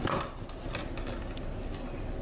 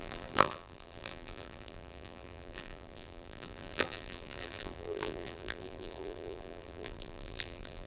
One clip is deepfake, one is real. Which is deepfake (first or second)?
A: second